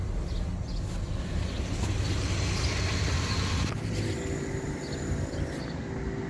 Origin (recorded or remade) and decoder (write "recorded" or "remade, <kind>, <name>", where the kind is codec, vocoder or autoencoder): recorded